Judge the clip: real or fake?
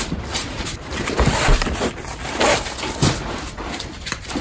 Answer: real